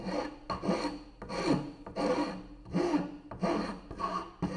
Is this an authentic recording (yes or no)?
yes